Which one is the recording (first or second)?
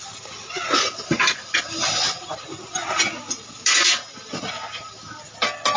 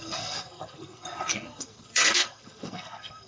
first